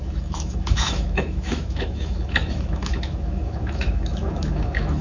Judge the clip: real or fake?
fake